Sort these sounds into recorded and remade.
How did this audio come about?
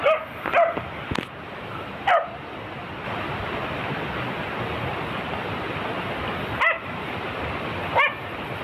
recorded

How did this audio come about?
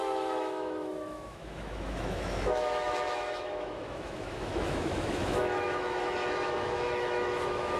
remade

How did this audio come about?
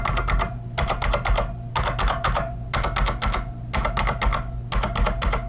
recorded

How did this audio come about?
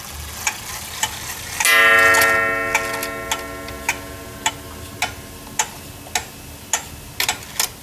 recorded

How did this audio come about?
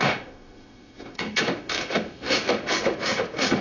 remade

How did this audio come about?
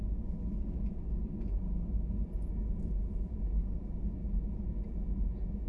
recorded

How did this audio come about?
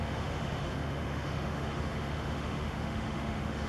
remade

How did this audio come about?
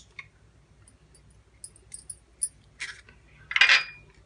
recorded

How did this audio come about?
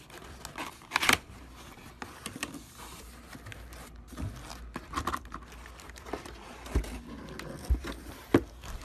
recorded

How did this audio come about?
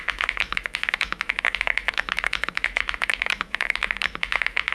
remade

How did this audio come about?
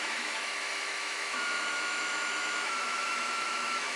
remade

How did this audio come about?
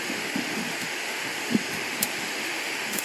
remade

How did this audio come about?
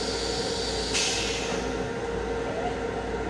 recorded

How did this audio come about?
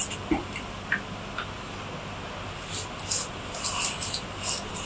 recorded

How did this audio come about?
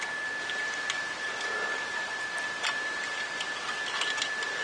recorded